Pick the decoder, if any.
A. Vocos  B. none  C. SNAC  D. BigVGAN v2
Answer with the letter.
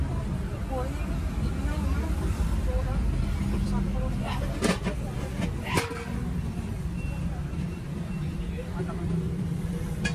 B